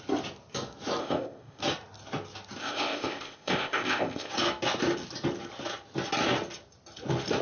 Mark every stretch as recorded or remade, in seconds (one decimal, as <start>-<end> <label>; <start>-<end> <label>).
0.0-1.0 recorded; 1.0-1.6 remade; 1.6-2.6 recorded; 2.6-4.3 remade; 4.3-7.4 recorded